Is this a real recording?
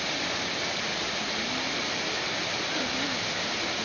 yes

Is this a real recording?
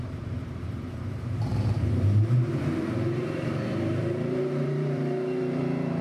no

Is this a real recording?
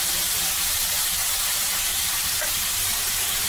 no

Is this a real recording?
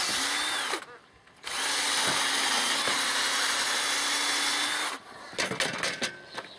yes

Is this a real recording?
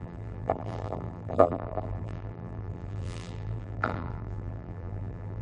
no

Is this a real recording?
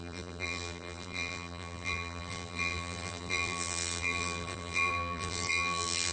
no